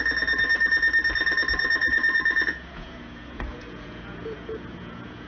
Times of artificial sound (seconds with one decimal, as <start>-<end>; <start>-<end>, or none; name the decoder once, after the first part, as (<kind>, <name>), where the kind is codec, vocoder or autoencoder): 1.8-5.3 (vocoder, Vocos)